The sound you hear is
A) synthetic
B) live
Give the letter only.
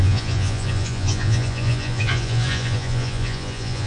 A